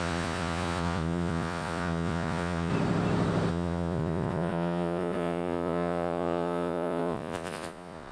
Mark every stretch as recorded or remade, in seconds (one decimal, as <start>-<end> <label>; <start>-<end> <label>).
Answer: 0.0-2.7 remade; 2.7-3.5 recorded; 3.5-8.1 remade